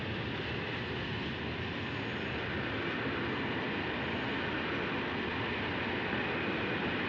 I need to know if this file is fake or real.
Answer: real